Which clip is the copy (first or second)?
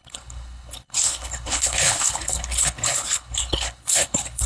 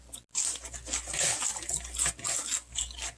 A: first